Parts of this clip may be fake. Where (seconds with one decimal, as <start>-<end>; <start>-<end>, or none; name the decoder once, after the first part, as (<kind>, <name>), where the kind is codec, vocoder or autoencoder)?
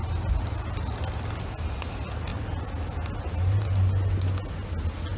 none